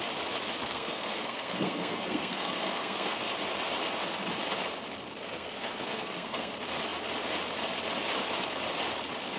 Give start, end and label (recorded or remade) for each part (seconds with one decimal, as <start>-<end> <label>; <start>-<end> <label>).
0.0-0.6 recorded; 0.6-3.3 remade; 3.3-5.2 recorded; 5.2-6.5 remade; 6.5-9.4 recorded